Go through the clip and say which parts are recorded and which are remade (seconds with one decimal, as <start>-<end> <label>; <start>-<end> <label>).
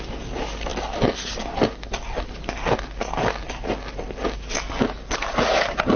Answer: 0.0-6.0 recorded